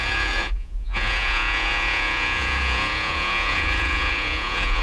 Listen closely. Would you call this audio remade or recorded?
remade